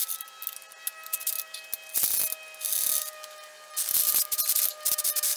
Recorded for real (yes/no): yes